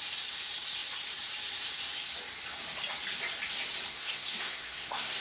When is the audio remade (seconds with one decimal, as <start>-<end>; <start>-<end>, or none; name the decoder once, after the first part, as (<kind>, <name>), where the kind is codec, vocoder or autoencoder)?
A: 3.9-5.2 (codec, SNAC)